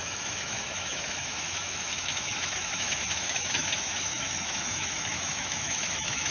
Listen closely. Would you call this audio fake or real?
fake